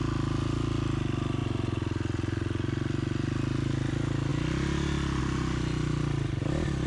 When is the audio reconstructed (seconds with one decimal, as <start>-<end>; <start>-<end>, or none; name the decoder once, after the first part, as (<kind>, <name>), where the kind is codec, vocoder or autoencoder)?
none